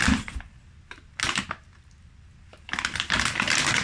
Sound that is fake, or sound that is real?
real